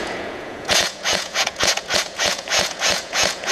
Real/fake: fake